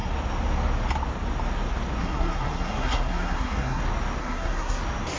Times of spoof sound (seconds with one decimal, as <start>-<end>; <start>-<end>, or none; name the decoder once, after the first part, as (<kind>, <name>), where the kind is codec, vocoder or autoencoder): 2.0-3.8 (codec, SNAC); 4.2-4.8